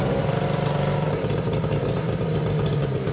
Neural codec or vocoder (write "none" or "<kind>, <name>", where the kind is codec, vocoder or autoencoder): vocoder, BigVGAN v2